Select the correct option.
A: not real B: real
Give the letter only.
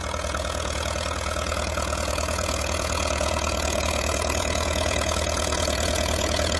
A